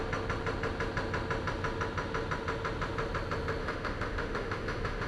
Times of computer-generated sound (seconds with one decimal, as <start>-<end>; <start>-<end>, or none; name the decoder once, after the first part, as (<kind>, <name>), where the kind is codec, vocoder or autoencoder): 3.6-5.1 (autoencoder, DAC-VAE)

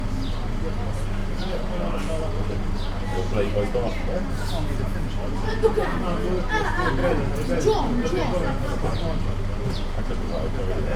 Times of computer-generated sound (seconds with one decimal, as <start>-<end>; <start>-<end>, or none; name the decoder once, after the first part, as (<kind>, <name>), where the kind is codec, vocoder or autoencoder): none

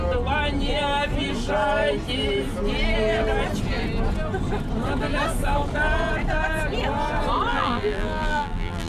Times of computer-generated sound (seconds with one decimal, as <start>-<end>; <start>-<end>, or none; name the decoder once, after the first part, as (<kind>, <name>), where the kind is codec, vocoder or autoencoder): 7.5-8.9 (vocoder, BigVGAN v2)